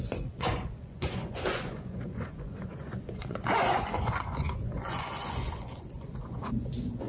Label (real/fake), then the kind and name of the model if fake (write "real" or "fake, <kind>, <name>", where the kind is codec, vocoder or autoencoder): fake, vocoder, Vocos